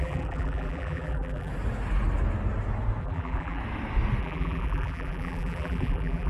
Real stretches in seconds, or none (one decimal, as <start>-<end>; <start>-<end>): 1.5-3.0; 3.6-4.2